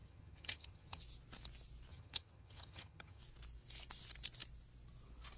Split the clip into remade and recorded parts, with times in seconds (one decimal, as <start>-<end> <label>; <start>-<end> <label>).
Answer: 0.0-1.0 remade; 1.0-1.9 recorded; 1.9-3.2 remade; 3.2-5.4 recorded